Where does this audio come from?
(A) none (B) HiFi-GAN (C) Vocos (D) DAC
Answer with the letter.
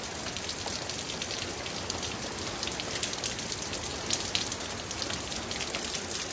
A